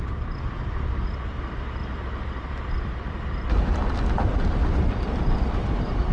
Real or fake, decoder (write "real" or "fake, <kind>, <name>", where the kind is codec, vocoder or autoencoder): real